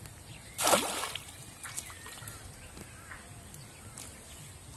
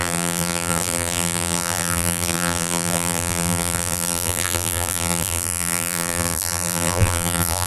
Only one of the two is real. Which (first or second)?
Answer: first